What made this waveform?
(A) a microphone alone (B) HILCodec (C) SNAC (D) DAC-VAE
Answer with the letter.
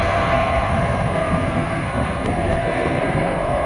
C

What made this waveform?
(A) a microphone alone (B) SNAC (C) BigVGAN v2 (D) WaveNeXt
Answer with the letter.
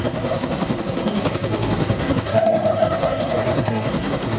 B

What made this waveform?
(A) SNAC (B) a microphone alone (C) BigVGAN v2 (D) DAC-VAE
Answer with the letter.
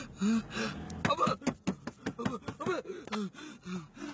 B